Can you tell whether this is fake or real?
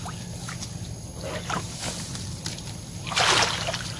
real